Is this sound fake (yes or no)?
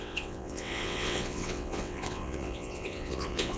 yes